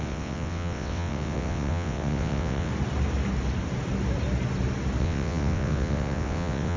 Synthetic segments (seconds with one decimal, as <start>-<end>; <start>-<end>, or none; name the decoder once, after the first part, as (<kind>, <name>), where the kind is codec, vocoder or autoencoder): 0.0-2.7 (vocoder, WaveNeXt); 5.0-6.8